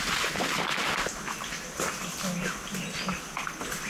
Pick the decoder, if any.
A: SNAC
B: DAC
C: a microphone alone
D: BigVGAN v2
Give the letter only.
C